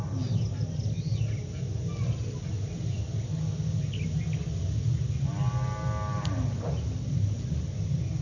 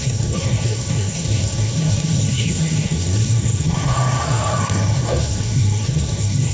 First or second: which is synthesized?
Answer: second